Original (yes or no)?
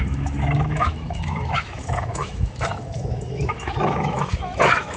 no